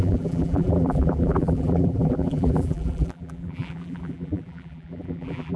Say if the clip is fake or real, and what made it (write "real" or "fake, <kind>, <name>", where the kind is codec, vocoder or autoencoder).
fake, vocoder, BigVGAN v2